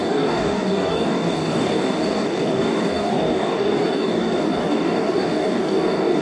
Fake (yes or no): yes